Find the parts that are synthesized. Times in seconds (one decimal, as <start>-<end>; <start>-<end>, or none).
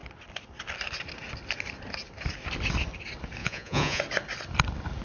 3.4-4.0